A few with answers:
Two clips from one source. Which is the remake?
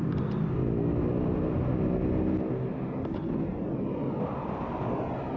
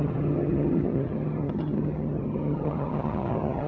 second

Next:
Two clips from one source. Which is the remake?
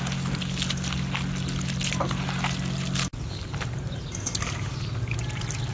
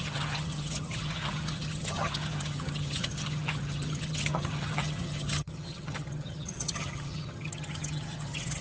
second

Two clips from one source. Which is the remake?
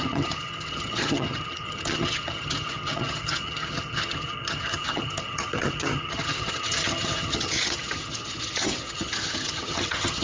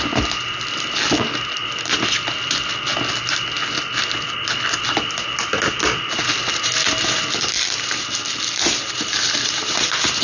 first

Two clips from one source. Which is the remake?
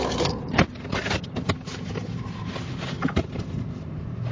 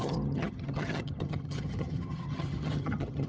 second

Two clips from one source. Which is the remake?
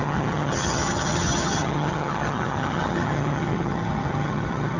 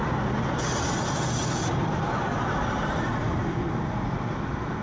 first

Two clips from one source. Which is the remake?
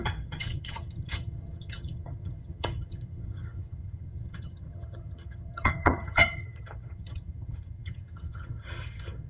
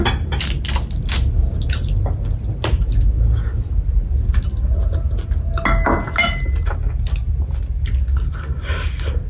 first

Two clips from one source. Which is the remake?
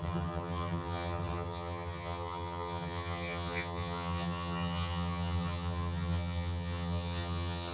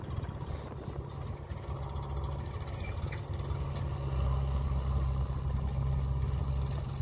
first